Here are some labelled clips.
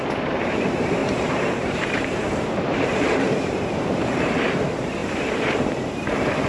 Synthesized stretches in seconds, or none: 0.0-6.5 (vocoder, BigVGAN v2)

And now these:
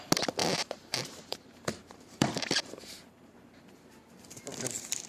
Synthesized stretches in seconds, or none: 0.4-3.1 (vocoder, BigVGAN v2)